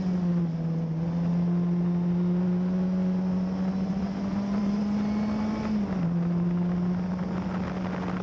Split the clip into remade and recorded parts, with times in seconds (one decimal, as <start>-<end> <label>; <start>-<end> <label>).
0.0-4.3 recorded; 4.3-4.8 remade; 4.8-8.2 recorded